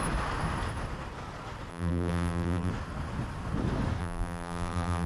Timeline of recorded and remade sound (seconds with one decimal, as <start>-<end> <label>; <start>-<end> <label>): 0.0-1.7 recorded; 1.7-2.7 remade; 2.7-4.0 recorded; 4.0-5.1 remade